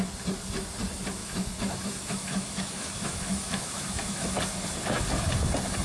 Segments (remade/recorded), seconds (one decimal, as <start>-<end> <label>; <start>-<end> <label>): 0.0-1.2 recorded; 1.2-4.4 remade; 4.4-5.8 recorded